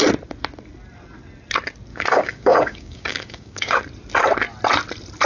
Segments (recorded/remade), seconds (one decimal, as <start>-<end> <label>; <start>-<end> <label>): 0.0-1.9 recorded; 1.9-3.8 remade; 3.8-5.2 recorded